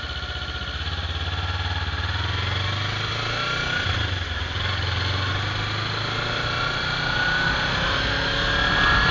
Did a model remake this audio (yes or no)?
no